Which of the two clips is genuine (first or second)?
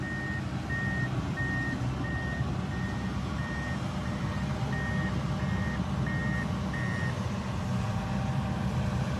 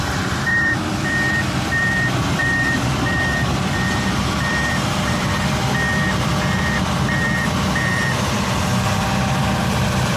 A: first